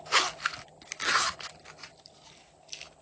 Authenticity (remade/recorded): recorded